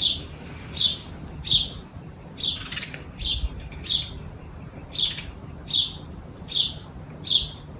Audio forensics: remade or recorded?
recorded